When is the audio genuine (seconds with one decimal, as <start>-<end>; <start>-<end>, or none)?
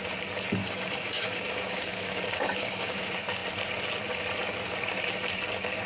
0.0-0.6; 3.0-5.9